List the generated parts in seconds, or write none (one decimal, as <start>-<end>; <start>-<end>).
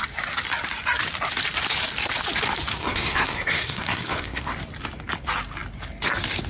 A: 2.7-4.5